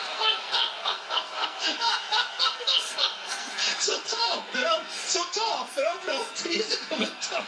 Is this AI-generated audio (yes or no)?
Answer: yes